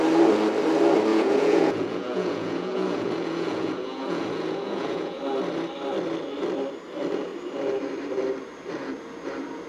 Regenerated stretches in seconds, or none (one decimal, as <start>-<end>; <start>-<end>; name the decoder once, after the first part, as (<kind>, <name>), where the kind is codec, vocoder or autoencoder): 1.1-5.2 (vocoder, Vocos)